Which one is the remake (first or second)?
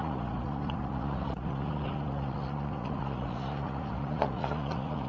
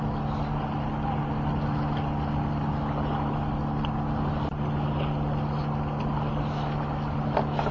first